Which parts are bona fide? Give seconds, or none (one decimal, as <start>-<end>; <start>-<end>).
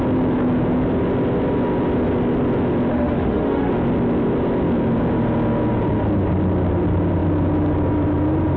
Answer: 0.0-2.9; 3.7-8.6